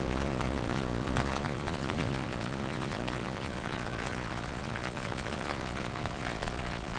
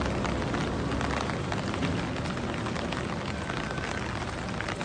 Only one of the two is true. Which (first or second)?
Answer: second